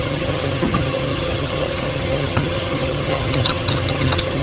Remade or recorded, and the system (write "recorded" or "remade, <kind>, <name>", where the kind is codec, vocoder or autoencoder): remade, vocoder, HiFi-GAN